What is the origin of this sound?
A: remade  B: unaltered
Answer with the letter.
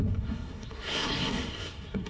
A